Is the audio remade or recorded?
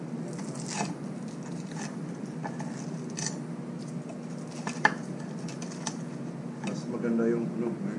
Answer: recorded